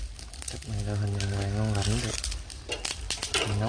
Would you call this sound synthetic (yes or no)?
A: no